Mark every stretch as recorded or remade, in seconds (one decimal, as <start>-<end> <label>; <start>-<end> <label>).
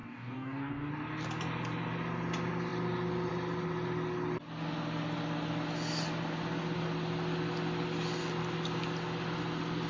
0.0-0.9 remade; 0.9-9.9 recorded